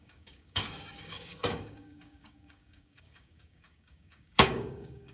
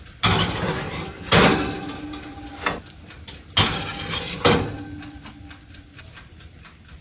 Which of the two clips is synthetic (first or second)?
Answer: first